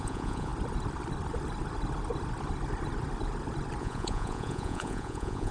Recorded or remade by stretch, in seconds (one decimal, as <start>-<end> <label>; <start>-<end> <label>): 0.0-0.5 remade; 0.5-3.8 recorded; 3.8-5.5 remade